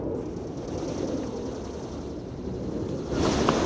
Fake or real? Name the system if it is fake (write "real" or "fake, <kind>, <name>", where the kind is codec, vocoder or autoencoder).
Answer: real